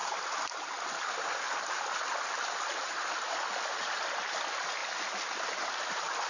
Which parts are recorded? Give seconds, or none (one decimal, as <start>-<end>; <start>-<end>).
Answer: 0.0-6.3